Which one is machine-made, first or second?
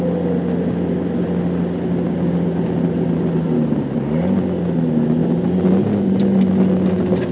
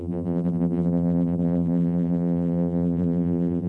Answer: second